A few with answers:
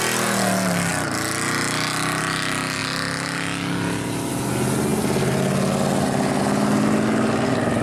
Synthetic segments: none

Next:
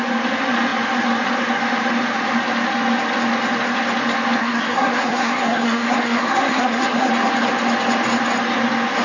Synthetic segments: 4.4-7.1 (codec, SNAC)